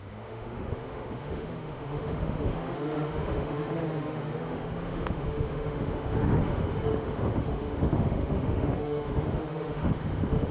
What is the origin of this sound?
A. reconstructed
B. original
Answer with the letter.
A